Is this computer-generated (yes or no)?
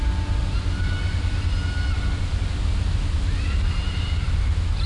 no